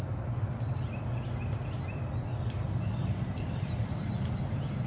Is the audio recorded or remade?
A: recorded